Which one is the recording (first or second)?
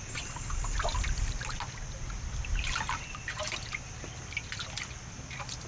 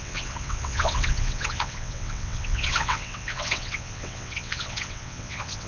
first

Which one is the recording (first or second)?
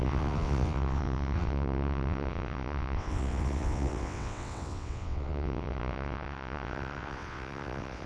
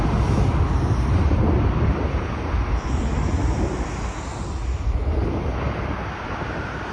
second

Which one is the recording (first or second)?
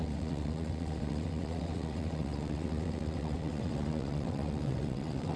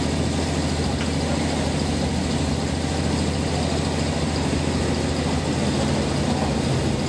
second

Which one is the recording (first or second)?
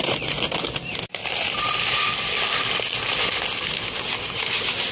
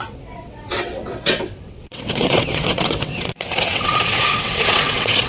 first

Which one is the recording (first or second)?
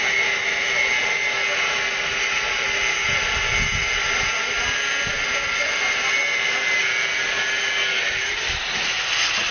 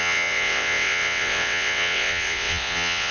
first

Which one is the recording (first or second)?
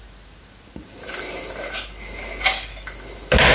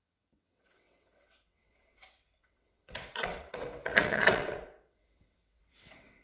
first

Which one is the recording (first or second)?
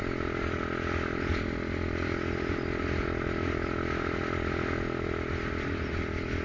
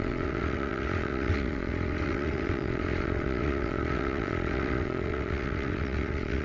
first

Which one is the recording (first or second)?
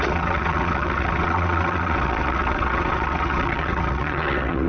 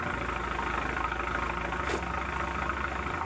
second